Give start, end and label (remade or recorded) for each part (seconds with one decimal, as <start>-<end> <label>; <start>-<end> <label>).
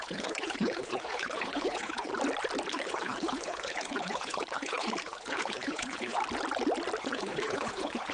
0.0-2.1 remade; 2.1-2.7 recorded; 2.7-6.2 remade; 6.2-7.0 recorded; 7.0-8.1 remade